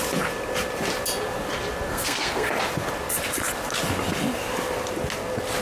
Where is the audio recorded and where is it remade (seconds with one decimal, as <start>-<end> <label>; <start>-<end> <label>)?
0.0-1.9 recorded; 1.9-2.5 remade; 2.5-5.6 recorded

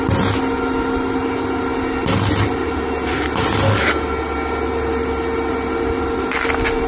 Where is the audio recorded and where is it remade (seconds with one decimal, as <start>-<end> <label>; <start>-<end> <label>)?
0.0-6.9 recorded

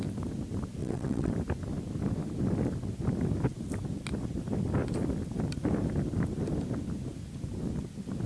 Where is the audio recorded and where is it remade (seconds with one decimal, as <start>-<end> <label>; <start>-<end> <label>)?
0.0-0.8 recorded; 0.8-1.3 remade; 1.3-8.3 recorded